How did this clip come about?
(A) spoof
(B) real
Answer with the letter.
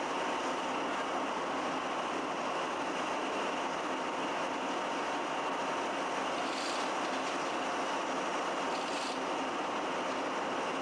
B